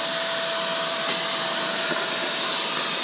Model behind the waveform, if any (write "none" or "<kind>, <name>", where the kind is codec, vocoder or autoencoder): none